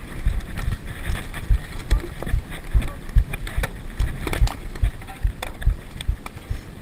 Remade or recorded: recorded